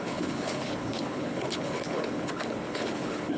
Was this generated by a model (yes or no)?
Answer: yes